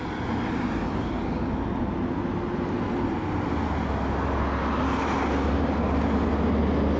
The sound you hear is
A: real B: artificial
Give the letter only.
A